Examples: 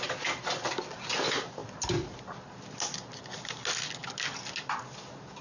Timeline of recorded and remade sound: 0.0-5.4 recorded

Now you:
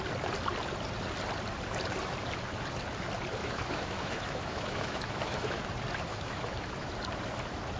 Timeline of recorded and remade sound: 0.0-3.4 recorded; 3.4-5.6 remade; 5.6-6.1 recorded; 6.1-6.9 remade; 6.9-7.8 recorded

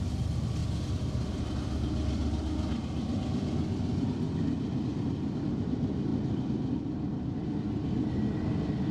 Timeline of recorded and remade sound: 0.0-8.9 recorded

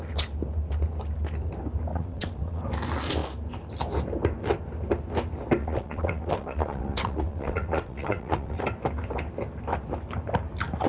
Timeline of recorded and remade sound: 0.0-1.9 recorded; 1.9-2.6 remade; 2.6-5.6 recorded; 5.6-8.6 remade; 8.6-10.9 recorded

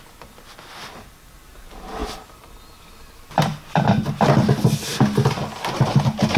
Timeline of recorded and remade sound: 0.0-2.0 recorded; 2.0-2.5 remade; 2.5-6.4 recorded